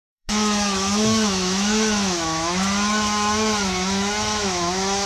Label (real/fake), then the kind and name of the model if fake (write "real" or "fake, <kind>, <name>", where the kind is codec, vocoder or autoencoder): fake, autoencoder, DAC-VAE